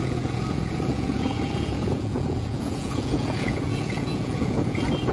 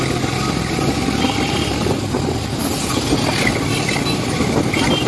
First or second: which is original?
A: second